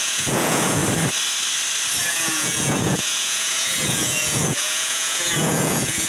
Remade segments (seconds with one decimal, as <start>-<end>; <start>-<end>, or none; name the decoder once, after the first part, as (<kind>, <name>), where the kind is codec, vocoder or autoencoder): 0.0-0.8 (vocoder, Vocos); 2.0-6.1